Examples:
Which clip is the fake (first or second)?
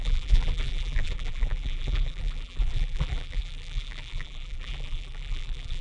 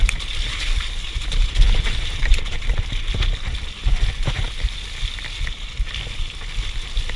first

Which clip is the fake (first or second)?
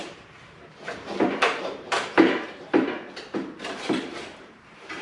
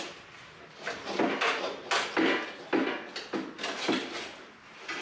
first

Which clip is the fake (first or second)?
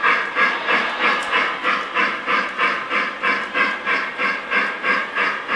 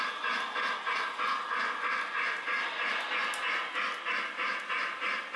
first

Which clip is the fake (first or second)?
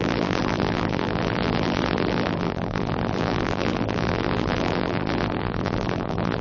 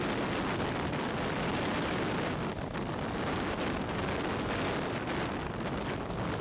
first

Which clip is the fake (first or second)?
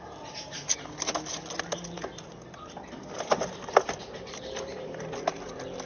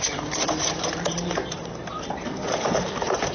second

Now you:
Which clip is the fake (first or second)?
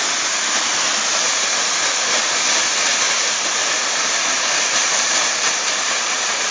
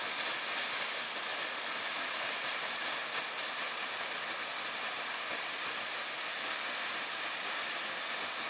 first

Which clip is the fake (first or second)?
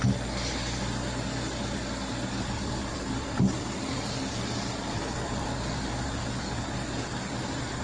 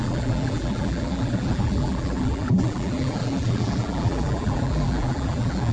second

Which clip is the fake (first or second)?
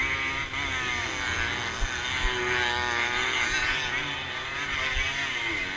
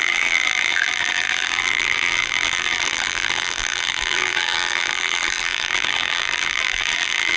second